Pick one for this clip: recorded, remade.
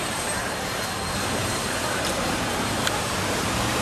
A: remade